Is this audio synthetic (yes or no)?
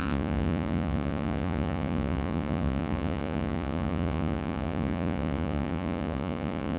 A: yes